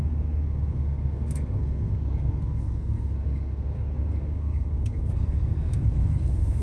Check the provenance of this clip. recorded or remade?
remade